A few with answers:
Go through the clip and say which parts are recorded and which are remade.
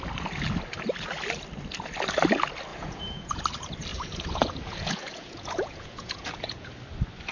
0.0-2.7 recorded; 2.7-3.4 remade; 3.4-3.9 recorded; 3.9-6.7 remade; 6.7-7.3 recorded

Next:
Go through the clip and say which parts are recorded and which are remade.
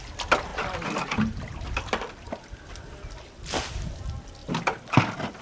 0.0-4.4 remade; 4.4-5.4 recorded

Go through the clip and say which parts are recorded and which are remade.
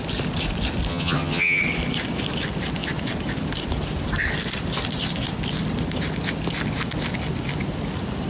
0.0-0.9 recorded; 0.9-1.6 remade; 1.6-8.3 recorded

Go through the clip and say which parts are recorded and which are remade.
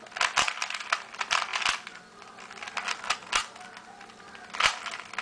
0.0-5.2 recorded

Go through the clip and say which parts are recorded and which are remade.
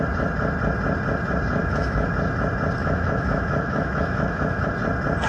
0.0-1.6 recorded; 1.6-2.1 remade; 2.1-2.8 recorded; 2.8-4.7 remade; 4.7-5.3 recorded